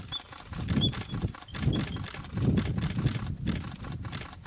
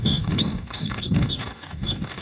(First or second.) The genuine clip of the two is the first